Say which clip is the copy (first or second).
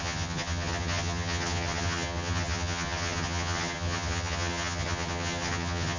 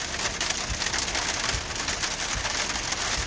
first